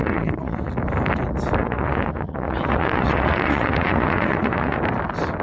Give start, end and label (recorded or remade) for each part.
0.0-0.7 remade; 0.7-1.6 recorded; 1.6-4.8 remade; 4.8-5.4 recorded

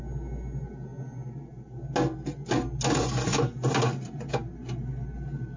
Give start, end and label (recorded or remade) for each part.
0.0-5.6 recorded

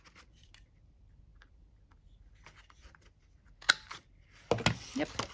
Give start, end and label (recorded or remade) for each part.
0.0-5.3 recorded

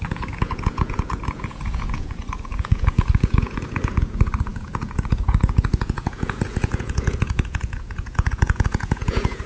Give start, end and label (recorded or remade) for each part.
0.0-9.5 remade